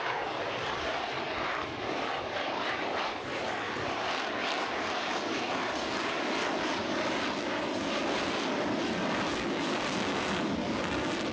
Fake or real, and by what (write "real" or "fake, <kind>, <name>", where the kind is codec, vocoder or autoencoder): fake, codec, DAC